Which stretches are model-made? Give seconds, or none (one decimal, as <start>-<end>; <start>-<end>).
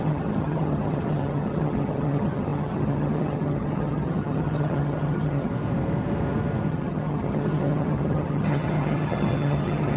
0.0-5.5; 6.7-10.0